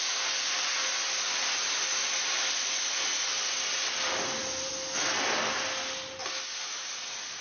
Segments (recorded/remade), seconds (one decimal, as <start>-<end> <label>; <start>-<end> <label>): 0.0-2.0 recorded; 2.0-4.7 remade; 4.7-6.2 recorded; 6.2-7.0 remade; 7.0-7.4 recorded